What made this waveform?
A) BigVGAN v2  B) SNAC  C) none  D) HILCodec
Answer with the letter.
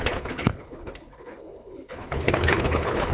D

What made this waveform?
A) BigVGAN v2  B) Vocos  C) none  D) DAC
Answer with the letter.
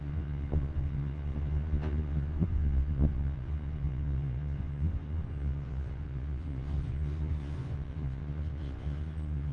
B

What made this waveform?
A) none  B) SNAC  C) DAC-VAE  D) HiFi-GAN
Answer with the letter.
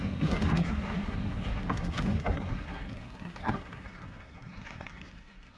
B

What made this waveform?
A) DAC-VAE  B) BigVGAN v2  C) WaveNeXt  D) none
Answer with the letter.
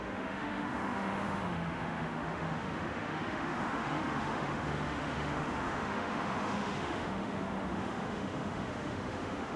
A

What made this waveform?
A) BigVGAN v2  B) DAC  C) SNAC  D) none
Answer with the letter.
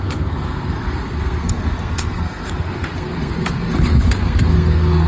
C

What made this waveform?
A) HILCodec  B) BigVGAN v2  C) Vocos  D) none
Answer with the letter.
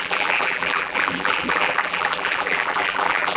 B